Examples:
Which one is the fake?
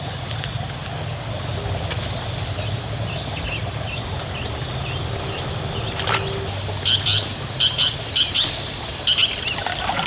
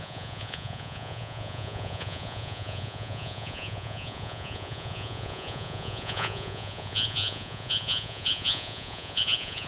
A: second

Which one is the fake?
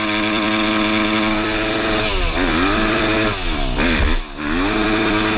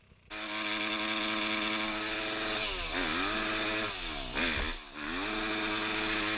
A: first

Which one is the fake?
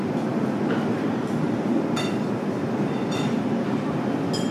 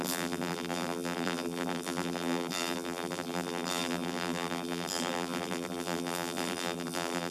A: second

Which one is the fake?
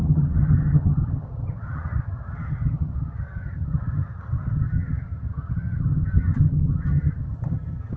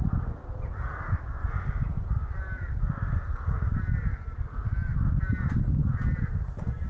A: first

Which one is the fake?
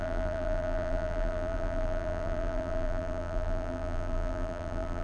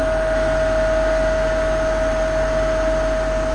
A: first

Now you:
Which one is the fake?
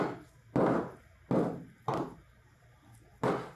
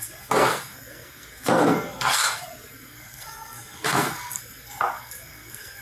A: second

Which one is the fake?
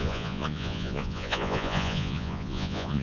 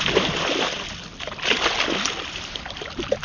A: first